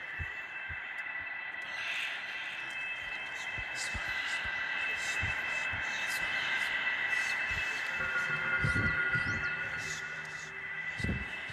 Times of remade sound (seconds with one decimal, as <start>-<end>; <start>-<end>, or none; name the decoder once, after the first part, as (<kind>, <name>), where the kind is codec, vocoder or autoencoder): 9.1-10.0 (vocoder, BigVGAN v2)